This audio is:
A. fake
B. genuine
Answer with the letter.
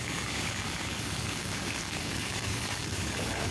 A